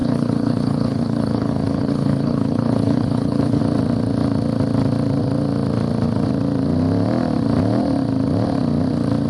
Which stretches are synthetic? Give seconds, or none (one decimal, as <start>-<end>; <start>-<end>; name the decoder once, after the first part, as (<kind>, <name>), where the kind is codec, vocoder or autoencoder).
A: 0.0-3.6 (codec, HILCodec)